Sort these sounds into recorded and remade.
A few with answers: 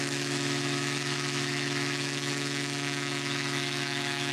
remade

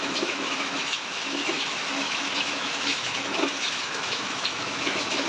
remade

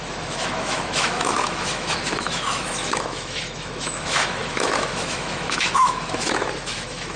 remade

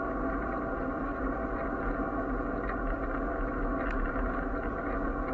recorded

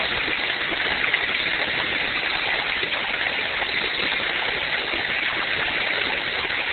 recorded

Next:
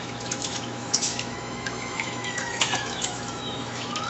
remade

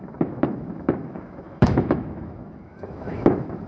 remade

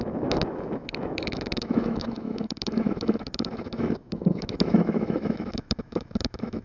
remade